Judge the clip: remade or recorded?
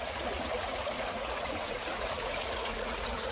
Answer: remade